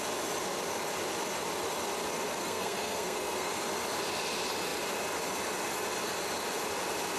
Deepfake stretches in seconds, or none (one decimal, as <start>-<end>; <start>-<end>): 2.4-3.5